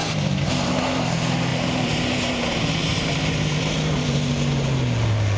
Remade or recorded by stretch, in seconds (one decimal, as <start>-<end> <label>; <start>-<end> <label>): 0.0-0.5 remade; 0.5-1.5 recorded; 1.5-2.3 remade; 2.3-2.8 recorded; 2.8-4.3 remade; 4.3-5.4 recorded

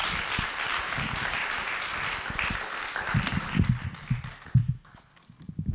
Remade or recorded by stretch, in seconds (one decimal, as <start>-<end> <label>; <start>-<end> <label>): 0.0-4.6 recorded; 4.6-5.1 remade; 5.1-5.7 recorded

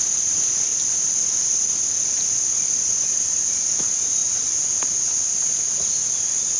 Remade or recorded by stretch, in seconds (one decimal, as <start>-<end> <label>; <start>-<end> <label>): 0.0-6.6 recorded

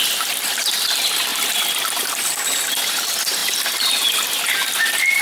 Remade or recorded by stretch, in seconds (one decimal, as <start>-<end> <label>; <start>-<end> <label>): 0.0-5.2 recorded

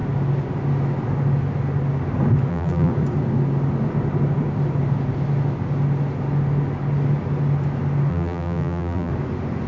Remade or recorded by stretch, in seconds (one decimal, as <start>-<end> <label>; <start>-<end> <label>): 0.0-2.5 recorded; 2.5-2.9 remade; 2.9-8.1 recorded; 8.1-9.1 remade; 9.1-9.7 recorded

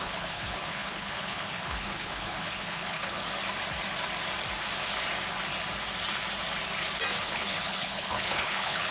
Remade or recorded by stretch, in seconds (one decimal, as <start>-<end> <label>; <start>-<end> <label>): 0.0-3.2 remade; 3.2-7.2 recorded; 7.2-8.9 remade

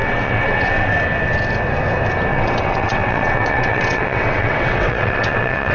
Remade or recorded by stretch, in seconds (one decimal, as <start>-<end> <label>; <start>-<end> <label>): 0.0-0.9 remade; 0.9-2.3 recorded; 2.3-5.7 remade